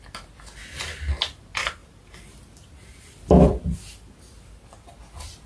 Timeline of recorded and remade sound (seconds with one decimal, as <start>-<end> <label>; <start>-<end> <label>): 0.0-5.5 recorded